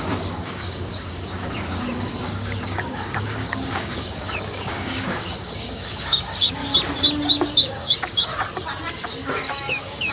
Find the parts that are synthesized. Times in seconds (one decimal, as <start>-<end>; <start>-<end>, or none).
0.0-6.6; 7.3-8.3; 8.9-10.1